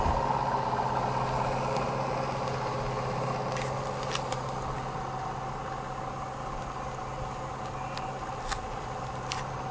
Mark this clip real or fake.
real